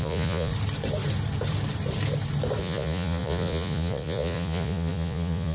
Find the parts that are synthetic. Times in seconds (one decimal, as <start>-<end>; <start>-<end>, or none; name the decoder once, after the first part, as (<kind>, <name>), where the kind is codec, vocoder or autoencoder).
0.0-0.5 (vocoder, Vocos); 2.6-5.5